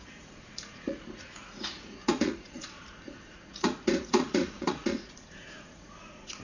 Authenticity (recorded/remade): remade